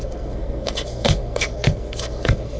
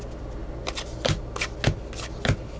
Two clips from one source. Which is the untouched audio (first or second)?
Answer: second